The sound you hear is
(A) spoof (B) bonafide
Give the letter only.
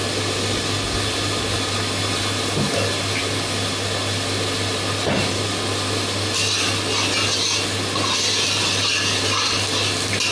B